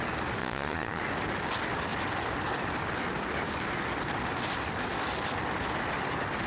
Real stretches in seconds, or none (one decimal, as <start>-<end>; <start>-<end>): 0.0-0.4; 1.0-6.5